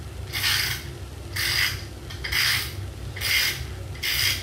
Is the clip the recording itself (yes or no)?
yes